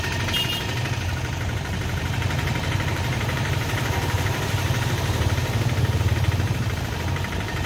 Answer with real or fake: fake